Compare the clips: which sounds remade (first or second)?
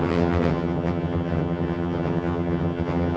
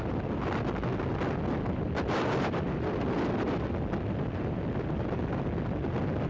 first